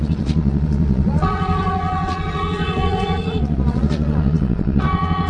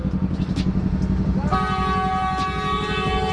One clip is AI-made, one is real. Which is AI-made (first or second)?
first